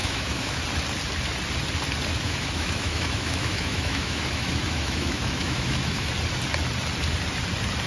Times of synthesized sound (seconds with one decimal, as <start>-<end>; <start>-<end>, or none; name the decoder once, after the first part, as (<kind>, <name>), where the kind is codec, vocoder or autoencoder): 0.0-0.6 (autoencoder, DAC-VAE); 2.1-6.1